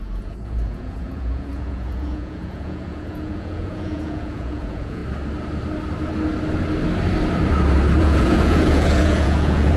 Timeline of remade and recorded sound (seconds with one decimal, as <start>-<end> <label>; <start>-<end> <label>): 0.0-5.0 remade; 5.0-8.0 recorded; 8.0-9.8 remade

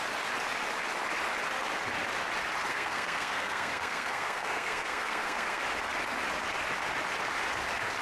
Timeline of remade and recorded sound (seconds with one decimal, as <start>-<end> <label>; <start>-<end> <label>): 0.0-2.7 recorded; 2.7-5.6 remade; 5.6-8.0 recorded

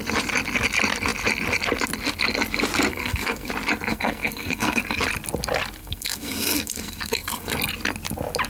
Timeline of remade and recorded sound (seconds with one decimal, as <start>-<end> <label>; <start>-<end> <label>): 0.0-2.9 recorded; 2.9-3.5 remade; 3.5-3.9 recorded; 3.9-4.8 remade; 4.8-5.8 recorded; 5.8-7.5 remade; 7.5-8.5 recorded

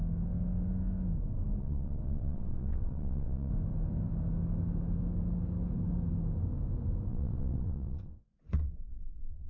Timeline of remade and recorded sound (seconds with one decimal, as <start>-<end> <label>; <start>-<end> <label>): 0.0-1.6 recorded; 1.6-3.5 remade; 3.5-7.1 recorded; 7.1-9.5 remade

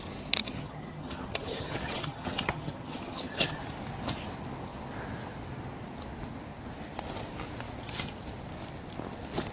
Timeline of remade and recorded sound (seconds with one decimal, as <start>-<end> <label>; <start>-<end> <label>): 0.0-0.4 recorded; 0.4-3.6 remade; 3.6-9.5 recorded

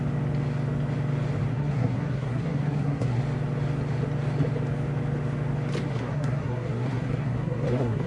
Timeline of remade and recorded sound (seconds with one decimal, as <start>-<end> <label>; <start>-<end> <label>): 0.0-1.5 recorded; 1.5-3.2 remade; 3.2-5.9 recorded; 5.9-8.1 remade